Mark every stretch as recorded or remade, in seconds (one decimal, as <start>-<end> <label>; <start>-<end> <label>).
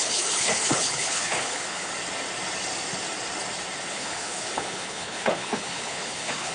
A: 0.0-1.9 remade; 1.9-3.9 recorded; 3.9-6.5 remade